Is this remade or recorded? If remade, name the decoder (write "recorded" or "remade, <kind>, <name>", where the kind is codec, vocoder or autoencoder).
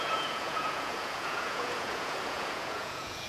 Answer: remade, vocoder, Vocos